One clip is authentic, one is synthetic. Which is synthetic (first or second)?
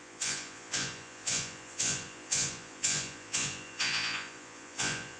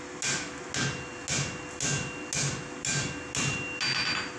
first